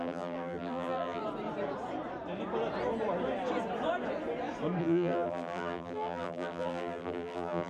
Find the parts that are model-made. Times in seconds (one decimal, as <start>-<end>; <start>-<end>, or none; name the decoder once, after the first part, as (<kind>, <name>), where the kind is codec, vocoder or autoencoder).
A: 0.0-1.2 (vocoder, BigVGAN v2); 4.8-7.7